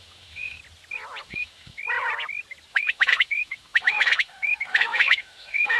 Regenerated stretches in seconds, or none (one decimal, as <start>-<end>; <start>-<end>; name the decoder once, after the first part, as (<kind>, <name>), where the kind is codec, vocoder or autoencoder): 0.0-0.6 (autoencoder, DAC-VAE); 1.2-1.8; 2.7-5.8